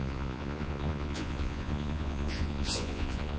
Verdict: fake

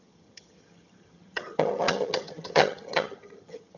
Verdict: fake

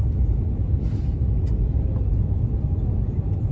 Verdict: real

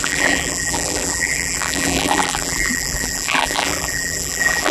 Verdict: fake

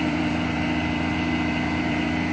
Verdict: fake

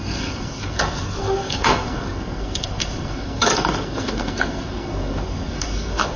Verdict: fake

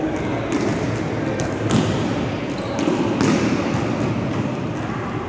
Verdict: real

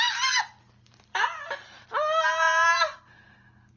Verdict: real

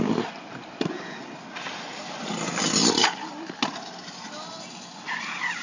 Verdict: real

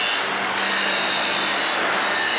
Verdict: real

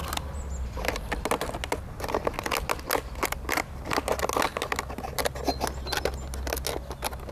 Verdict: real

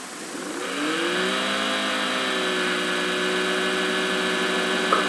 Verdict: real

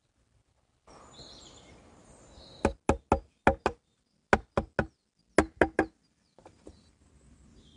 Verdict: real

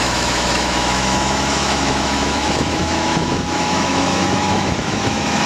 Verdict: fake